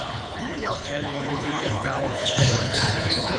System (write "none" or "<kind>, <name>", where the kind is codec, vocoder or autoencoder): codec, HILCodec